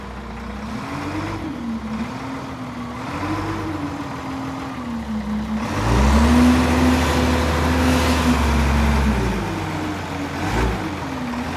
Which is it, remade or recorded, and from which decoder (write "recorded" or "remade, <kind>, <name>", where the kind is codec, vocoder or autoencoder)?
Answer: recorded